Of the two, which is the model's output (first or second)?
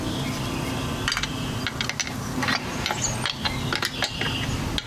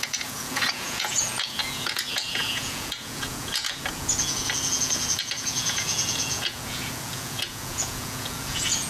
second